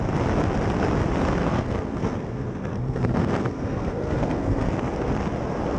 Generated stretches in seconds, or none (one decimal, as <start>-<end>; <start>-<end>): 1.4-4.9